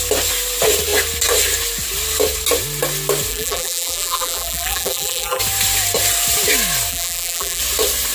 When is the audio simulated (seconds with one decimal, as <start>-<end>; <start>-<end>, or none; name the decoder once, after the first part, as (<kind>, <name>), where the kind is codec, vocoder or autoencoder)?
3.3-5.4 (vocoder, BigVGAN v2); 6.9-7.6